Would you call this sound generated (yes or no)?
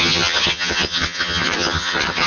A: yes